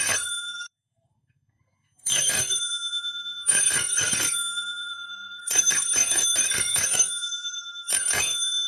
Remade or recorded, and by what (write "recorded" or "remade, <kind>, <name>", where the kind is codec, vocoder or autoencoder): remade, codec, SNAC